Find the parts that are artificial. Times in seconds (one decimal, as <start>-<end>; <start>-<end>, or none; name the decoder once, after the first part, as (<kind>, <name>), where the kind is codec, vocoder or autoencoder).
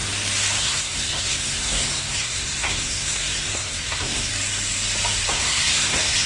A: 0.6-4.3 (codec, SNAC); 5.3-6.3